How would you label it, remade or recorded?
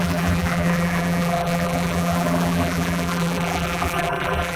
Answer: remade